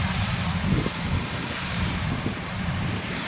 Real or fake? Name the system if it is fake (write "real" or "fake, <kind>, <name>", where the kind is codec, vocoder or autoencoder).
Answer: fake, vocoder, BigVGAN v2